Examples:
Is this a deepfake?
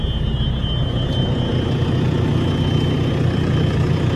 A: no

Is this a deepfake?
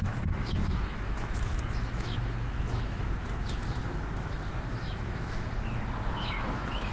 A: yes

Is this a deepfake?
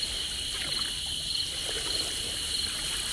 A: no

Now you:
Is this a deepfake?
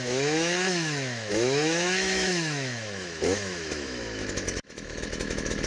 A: yes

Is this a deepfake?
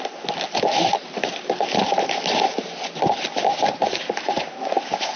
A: no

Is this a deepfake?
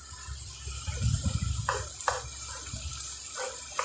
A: no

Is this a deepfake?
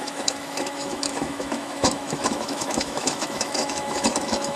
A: yes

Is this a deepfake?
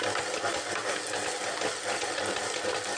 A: no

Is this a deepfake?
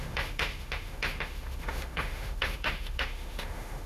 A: yes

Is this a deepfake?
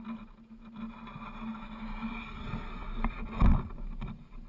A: no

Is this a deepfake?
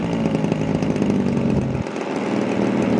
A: no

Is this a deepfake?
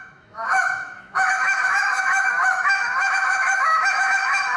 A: yes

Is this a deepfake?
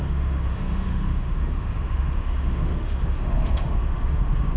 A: yes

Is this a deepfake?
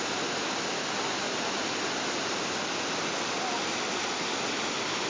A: no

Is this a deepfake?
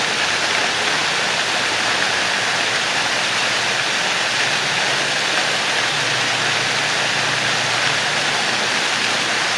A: no